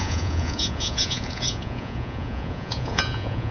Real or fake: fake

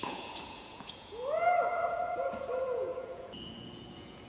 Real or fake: fake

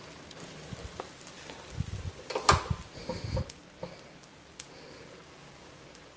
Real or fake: real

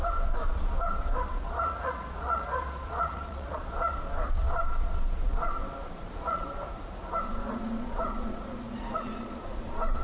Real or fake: fake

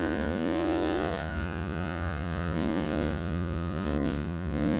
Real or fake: fake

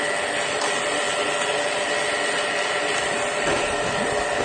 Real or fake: real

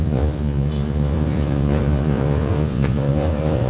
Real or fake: fake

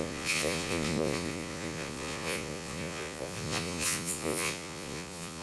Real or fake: fake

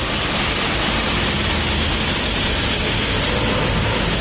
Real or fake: real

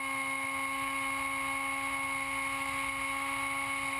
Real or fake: real